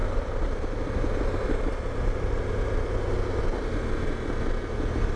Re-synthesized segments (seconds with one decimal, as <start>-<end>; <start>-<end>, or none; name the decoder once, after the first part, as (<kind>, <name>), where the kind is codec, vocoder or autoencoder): 0.0-3.1 (vocoder, BigVGAN v2)